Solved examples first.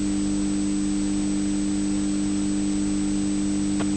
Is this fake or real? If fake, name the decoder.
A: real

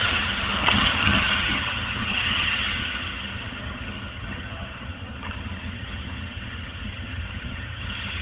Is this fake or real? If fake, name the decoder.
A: fake, vocoder, HiFi-GAN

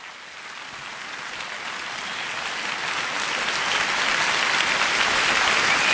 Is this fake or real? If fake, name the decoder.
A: real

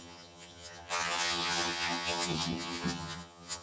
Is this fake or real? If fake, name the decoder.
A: fake, vocoder, HiFi-GAN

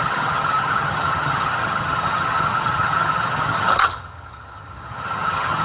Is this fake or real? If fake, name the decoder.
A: fake, vocoder, HiFi-GAN